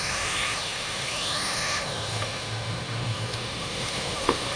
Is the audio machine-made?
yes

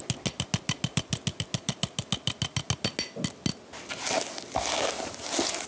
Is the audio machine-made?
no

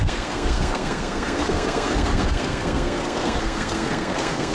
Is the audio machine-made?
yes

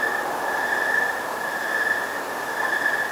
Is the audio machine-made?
no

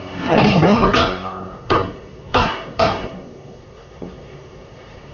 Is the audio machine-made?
yes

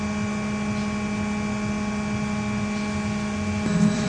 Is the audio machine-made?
no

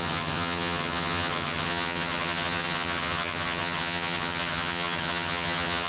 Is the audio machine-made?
yes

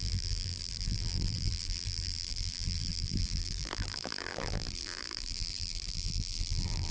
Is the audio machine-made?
yes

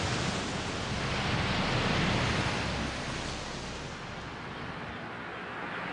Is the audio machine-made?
no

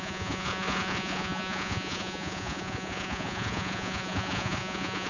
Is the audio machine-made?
yes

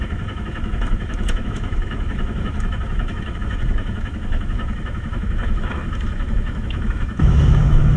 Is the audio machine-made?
yes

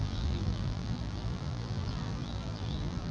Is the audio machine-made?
yes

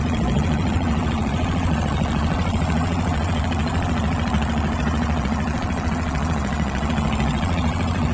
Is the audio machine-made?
yes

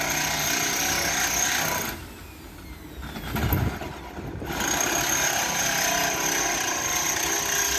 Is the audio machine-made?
no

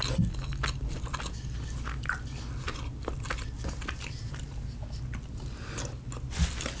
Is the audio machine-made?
no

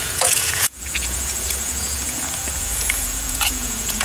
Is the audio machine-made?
yes